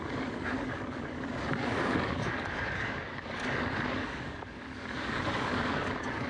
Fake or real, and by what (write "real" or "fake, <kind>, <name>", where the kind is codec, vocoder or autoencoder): fake, codec, DAC